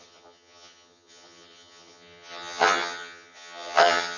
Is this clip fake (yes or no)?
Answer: yes